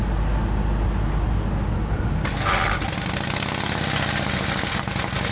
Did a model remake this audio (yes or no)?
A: no